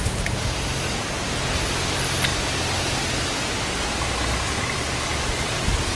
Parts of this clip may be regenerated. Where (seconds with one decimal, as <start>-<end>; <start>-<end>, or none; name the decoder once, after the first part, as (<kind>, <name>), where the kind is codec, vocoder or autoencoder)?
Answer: none